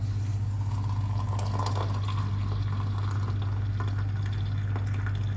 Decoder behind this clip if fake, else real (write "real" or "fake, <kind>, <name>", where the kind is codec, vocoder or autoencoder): real